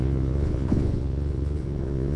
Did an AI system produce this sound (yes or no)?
yes